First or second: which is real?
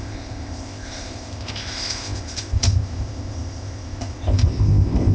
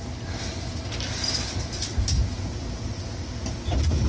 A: second